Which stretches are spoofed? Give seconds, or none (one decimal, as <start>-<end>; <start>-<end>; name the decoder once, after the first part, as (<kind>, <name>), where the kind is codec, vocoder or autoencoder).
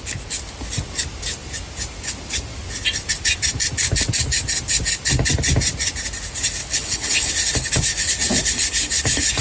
6.6-7.3 (codec, HILCodec)